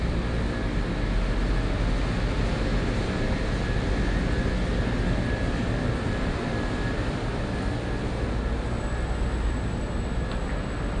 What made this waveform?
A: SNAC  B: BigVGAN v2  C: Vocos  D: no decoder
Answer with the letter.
D